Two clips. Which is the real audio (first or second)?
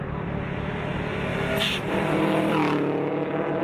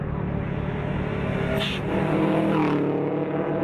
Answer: second